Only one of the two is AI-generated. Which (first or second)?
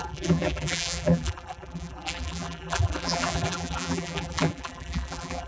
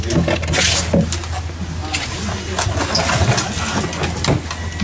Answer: first